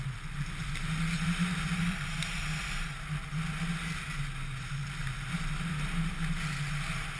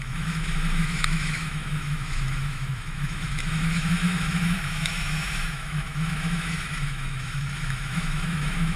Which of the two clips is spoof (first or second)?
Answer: second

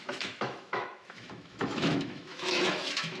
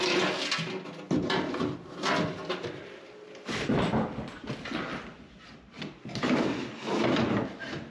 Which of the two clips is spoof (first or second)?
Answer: first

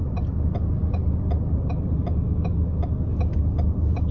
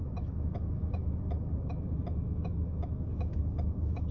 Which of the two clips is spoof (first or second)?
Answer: second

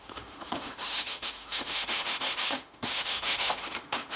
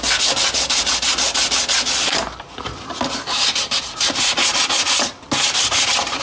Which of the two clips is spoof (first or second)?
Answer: first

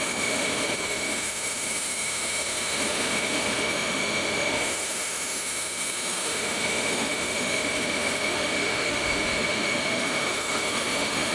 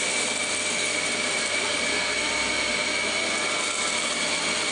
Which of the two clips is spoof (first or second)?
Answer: first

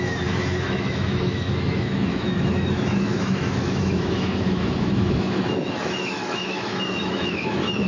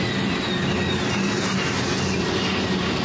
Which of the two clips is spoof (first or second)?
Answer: first